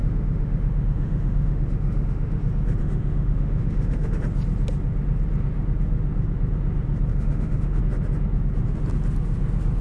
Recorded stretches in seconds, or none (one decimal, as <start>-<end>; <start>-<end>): 2.4-2.8; 4.2-7.1; 7.8-9.8